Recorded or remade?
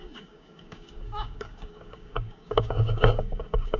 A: remade